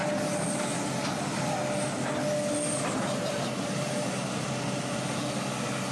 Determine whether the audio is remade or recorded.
recorded